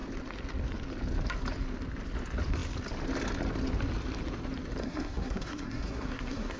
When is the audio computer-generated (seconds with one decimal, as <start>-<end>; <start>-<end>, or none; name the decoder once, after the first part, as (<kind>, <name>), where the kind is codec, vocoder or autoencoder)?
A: 4.8-6.6 (codec, SNAC)

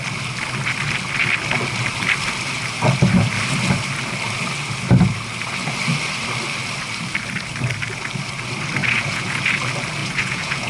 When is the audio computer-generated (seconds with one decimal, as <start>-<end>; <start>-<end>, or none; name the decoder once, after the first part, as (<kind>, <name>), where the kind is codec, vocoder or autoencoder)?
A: 8.8-9.4 (vocoder, Vocos); 10.0-10.7

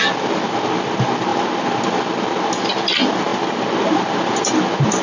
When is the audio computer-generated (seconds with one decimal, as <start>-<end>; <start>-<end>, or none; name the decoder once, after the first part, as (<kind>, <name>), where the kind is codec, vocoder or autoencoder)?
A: none

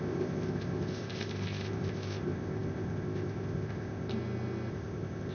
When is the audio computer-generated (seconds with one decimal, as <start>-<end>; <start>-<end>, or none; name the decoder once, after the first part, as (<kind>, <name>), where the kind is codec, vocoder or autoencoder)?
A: 0.0-4.1 (codec, ZipCodec); 4.7-5.3